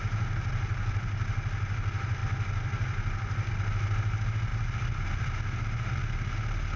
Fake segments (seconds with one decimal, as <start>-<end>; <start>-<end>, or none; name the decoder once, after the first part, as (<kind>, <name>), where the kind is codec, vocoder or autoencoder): none